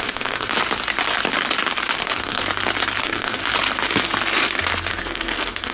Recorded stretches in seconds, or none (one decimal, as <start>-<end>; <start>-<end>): 0.5-2.0; 2.4-3.0; 3.4-4.9

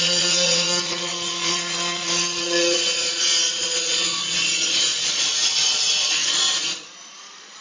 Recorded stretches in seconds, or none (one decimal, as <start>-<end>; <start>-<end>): none

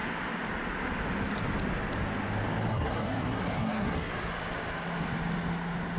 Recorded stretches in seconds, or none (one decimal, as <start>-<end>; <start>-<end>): 0.0-2.7; 4.1-6.0

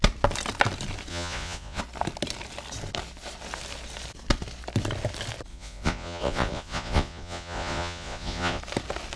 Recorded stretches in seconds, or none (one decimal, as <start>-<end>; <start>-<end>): 0.0-1.1; 1.8-5.5; 8.6-9.2

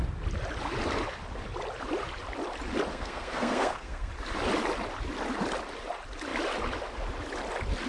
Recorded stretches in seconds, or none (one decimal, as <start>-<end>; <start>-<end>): 0.0-2.9; 4.1-7.9